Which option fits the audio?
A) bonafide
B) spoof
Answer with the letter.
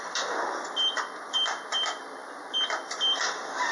A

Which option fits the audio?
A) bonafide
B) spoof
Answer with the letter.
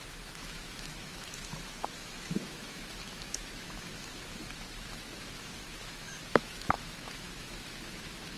B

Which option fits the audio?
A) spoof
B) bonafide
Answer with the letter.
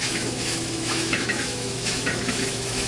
A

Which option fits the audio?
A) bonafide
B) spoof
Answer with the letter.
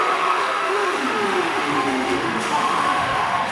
B